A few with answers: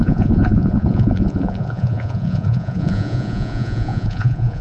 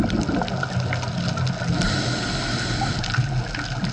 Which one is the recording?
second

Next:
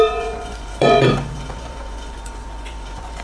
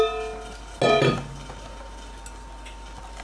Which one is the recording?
second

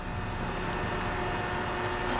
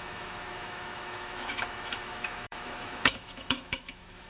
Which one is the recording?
first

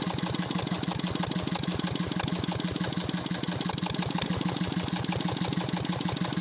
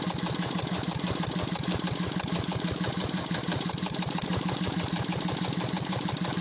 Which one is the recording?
first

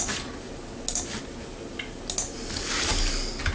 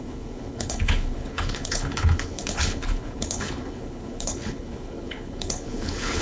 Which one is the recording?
first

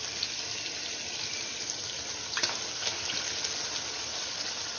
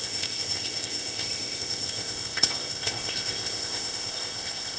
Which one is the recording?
first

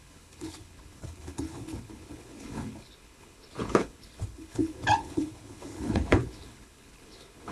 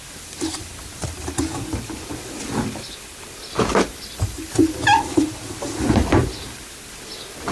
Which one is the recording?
second